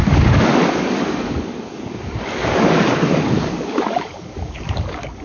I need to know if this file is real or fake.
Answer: fake